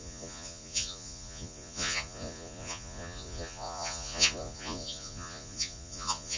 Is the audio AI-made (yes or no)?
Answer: yes